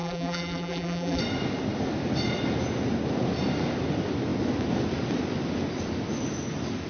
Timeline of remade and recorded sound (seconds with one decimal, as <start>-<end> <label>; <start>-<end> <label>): 0.0-1.2 remade; 1.2-6.9 recorded